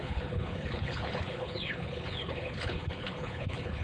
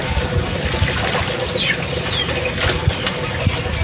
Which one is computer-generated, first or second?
first